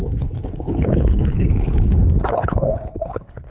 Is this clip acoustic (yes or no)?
no